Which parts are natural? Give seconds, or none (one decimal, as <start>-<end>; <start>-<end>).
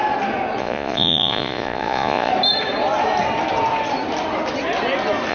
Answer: 0.0-0.6; 2.3-5.3